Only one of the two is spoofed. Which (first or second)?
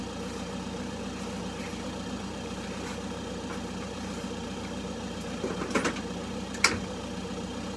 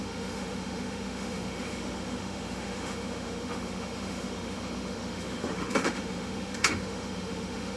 second